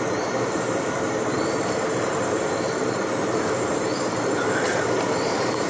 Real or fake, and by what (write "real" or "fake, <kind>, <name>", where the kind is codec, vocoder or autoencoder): fake, vocoder, BigVGAN v2